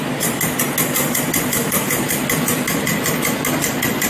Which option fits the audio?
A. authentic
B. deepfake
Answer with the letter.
A